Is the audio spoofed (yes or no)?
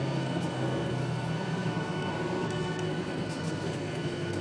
yes